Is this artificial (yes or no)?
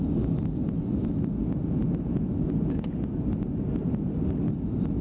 no